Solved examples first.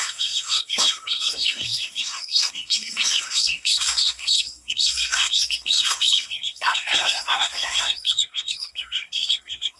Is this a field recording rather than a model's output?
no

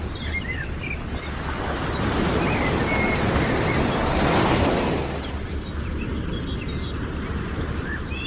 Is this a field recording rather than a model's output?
yes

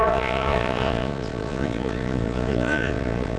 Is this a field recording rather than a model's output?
no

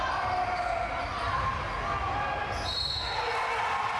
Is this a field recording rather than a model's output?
yes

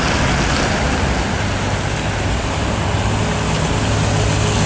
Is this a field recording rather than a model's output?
yes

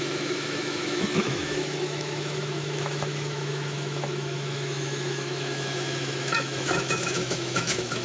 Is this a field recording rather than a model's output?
no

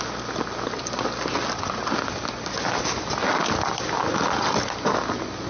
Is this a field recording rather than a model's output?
yes